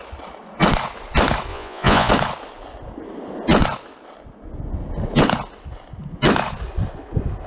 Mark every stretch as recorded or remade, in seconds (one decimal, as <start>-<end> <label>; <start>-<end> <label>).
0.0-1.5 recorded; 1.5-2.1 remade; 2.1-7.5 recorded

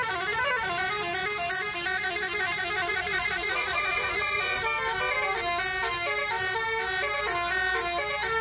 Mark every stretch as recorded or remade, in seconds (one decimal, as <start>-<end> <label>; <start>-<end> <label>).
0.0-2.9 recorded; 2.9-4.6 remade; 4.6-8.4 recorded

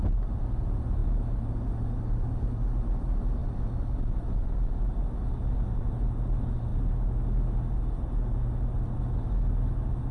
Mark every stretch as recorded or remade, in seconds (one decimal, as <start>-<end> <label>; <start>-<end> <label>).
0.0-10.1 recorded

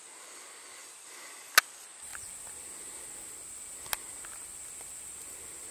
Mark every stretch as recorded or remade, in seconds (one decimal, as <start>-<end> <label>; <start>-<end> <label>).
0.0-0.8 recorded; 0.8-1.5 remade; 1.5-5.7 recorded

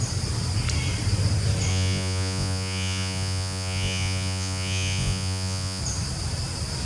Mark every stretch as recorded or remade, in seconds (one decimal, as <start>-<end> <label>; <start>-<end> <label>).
0.0-1.7 recorded; 1.7-5.8 remade; 5.8-6.8 recorded

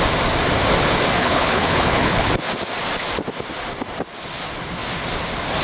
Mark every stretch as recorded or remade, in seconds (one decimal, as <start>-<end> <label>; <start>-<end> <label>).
0.0-1.2 recorded; 1.2-2.3 remade; 2.3-5.6 recorded